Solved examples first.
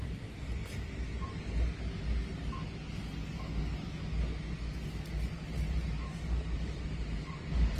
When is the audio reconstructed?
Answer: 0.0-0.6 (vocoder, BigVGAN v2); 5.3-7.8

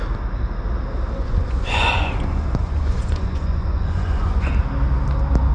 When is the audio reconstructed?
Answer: 1.2-4.5 (vocoder, Vocos)

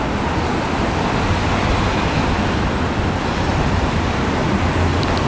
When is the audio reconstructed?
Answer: 0.5-1.4 (vocoder, BigVGAN v2); 3.5-4.5

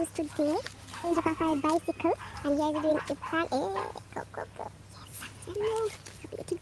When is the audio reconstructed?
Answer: 0.9-1.6 (codec, SNAC)

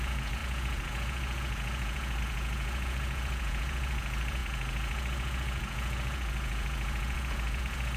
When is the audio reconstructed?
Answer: 0.0-8.0 (vocoder, Vocos)

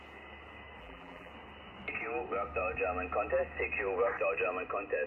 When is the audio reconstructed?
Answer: 0.8-1.3 (vocoder, BigVGAN v2)

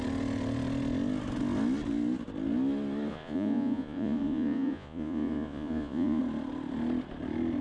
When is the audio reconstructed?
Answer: 3.1-6.2 (vocoder, Vocos)